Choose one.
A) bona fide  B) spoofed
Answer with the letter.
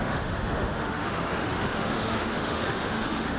B